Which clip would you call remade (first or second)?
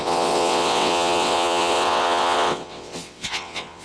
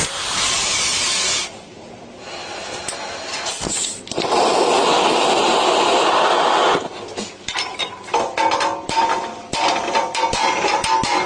first